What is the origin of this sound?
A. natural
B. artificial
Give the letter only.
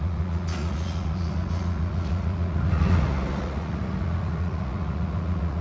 B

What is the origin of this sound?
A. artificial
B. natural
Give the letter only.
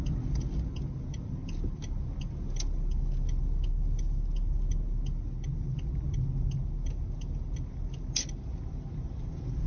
B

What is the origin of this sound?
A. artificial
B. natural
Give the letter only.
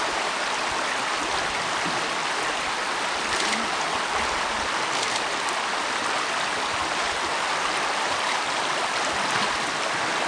B